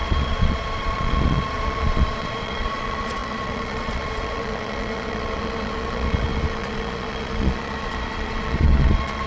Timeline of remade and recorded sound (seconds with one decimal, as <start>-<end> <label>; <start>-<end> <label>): 0.0-9.3 remade